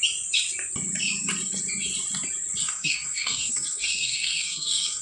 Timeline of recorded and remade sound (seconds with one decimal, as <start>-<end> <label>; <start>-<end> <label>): 0.0-2.6 recorded; 2.6-5.0 remade